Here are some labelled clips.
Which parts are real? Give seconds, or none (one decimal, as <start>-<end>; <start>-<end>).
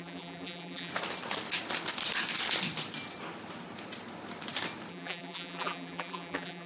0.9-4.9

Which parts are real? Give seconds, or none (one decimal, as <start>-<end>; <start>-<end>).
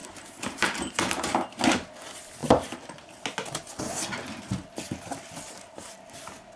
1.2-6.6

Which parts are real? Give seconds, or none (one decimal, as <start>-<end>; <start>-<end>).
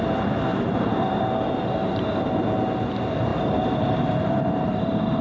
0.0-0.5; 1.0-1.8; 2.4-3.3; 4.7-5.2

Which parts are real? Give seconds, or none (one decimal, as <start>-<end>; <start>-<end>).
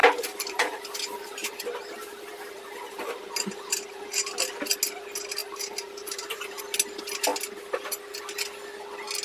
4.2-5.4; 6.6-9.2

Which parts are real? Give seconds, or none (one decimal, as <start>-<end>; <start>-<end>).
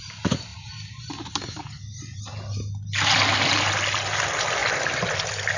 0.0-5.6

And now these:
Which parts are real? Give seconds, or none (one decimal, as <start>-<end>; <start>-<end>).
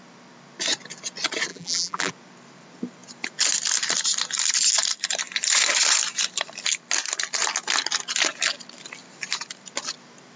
0.0-1.5; 2.1-10.4